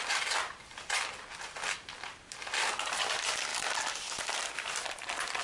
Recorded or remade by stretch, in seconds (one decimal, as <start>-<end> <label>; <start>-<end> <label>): 0.0-3.5 remade; 3.5-4.2 recorded; 4.2-5.4 remade